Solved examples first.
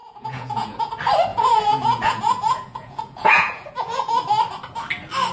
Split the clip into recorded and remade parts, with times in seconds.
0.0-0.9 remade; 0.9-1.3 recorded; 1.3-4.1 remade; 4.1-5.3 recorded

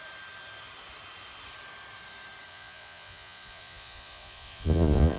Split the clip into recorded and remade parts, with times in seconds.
0.0-2.5 recorded; 2.5-5.2 remade

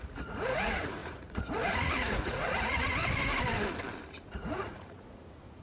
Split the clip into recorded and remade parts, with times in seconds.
0.0-2.9 remade; 2.9-4.2 recorded; 4.2-5.6 remade

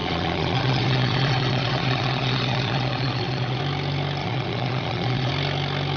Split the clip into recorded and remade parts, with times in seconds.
0.0-3.6 remade; 3.6-4.2 recorded; 4.2-5.3 remade; 5.3-6.0 recorded